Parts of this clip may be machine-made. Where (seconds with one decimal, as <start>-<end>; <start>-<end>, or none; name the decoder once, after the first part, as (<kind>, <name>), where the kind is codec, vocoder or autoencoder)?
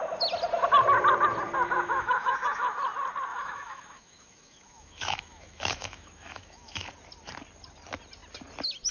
1.9-2.7 (autoencoder, DAC-VAE); 3.3-6.9